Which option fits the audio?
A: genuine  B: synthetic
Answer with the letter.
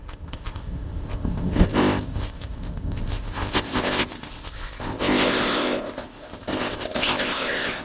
B